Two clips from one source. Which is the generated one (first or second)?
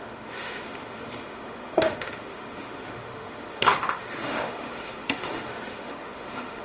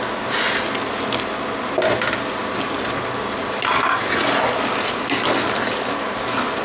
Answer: first